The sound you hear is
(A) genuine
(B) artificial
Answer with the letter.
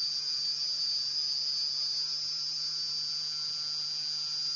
A